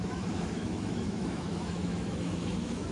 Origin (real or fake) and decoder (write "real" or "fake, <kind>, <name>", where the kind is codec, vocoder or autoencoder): fake, autoencoder, DAC-VAE